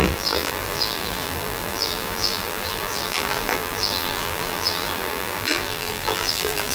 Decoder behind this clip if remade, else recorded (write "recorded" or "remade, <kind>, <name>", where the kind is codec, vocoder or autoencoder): remade, vocoder, BigVGAN v2